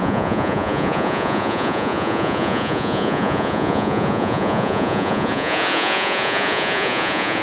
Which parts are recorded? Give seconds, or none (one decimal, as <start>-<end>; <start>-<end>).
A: none